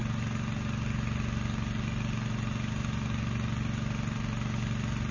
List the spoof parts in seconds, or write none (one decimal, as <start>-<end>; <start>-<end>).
none